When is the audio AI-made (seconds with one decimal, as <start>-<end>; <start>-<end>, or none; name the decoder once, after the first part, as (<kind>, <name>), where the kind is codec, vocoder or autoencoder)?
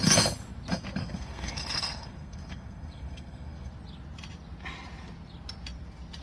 1.0-3.7 (codec, SNAC)